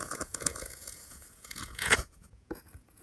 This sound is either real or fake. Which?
fake